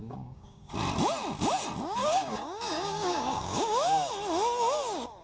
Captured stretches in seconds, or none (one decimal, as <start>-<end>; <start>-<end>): 0.7-2.0; 4.1-5.2